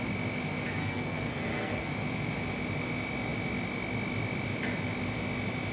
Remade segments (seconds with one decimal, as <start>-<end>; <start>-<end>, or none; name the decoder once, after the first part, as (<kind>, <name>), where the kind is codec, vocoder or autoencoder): 0.8-1.9 (codec, SNAC)

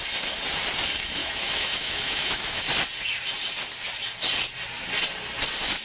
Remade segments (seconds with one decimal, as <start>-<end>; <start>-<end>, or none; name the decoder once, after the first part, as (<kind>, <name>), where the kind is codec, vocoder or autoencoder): 1.2-2.6 (autoencoder, DAC-VAE)